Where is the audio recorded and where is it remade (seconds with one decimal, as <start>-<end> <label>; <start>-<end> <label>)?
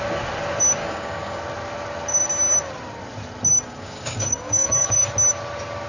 0.0-0.8 recorded; 0.8-1.4 remade; 1.4-3.5 recorded; 3.5-5.1 remade; 5.1-5.9 recorded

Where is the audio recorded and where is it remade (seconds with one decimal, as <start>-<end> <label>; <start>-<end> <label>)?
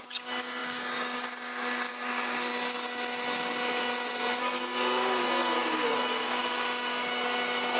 0.0-2.5 remade; 2.5-4.4 recorded; 4.4-7.8 remade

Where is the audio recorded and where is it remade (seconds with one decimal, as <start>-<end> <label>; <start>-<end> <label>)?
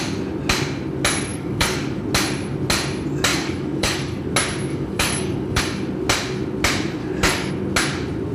0.0-1.3 recorded; 1.3-2.0 remade; 2.0-3.3 recorded; 3.3-4.3 remade; 4.3-4.7 recorded; 4.7-5.6 remade; 5.6-7.0 recorded; 7.0-7.5 remade; 7.5-8.3 recorded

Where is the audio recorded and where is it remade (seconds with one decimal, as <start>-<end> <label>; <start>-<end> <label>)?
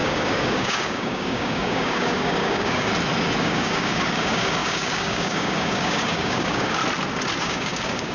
0.0-2.9 remade; 2.9-3.4 recorded; 3.4-6.8 remade; 6.8-7.4 recorded; 7.4-8.1 remade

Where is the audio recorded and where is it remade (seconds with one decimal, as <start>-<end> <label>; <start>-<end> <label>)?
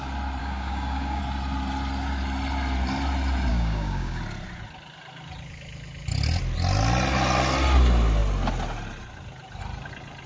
0.0-0.4 recorded; 0.4-1.2 remade; 1.2-3.5 recorded; 3.5-4.2 remade; 4.2-10.3 recorded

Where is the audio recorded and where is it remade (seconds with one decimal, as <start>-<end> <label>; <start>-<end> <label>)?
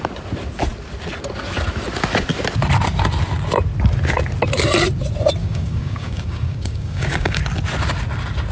0.0-5.4 recorded; 5.4-7.4 remade; 7.4-8.5 recorded